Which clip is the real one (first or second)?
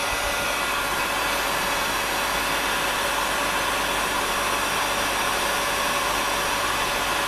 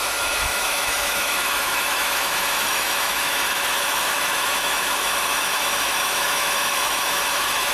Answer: first